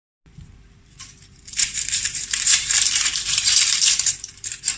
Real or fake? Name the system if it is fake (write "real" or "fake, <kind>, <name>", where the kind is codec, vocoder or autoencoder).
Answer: fake, vocoder, BigVGAN v2